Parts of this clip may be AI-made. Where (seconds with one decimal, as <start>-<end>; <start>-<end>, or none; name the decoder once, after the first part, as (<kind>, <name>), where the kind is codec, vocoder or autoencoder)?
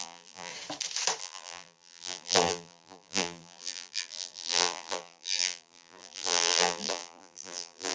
0.0-0.5 (vocoder, BigVGAN v2); 1.2-7.9